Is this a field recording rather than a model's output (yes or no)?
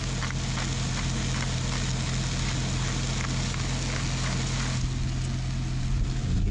yes